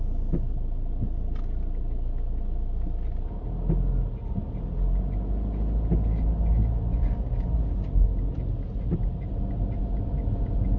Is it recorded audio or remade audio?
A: recorded